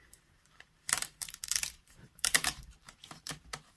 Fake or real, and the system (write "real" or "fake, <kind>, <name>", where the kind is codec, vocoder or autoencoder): fake, vocoder, BigVGAN v2